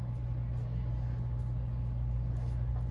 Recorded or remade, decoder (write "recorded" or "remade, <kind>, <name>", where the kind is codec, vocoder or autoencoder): recorded